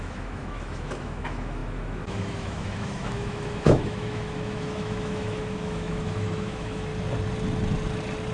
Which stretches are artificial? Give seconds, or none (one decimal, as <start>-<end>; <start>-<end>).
0.0-6.9